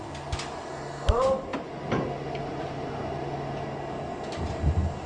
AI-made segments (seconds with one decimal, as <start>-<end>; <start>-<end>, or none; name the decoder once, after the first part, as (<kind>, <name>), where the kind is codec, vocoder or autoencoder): none